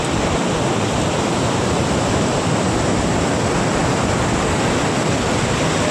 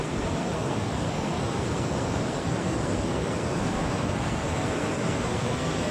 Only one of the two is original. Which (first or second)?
first